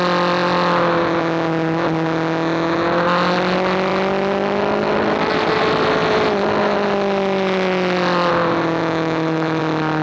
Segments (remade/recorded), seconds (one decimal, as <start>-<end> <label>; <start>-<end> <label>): 0.0-8.8 recorded; 8.8-9.6 remade; 9.6-10.0 recorded